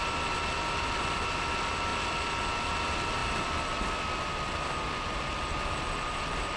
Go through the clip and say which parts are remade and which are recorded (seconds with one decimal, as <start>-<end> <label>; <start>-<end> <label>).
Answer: 0.0-6.6 recorded